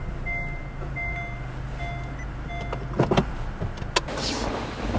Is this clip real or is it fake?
real